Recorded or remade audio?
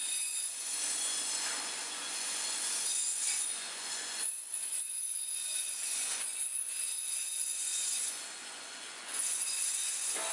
remade